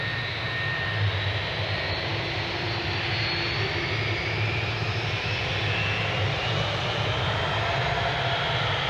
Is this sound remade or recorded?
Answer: recorded